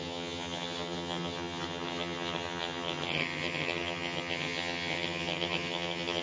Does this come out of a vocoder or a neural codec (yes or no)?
yes